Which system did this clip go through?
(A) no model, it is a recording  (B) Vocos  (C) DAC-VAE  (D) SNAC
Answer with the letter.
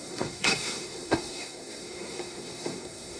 D